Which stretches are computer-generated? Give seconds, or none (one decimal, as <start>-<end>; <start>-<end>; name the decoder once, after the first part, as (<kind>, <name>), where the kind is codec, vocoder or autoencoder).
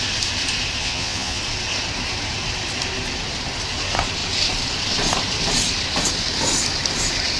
0.8-1.4 (vocoder, Vocos)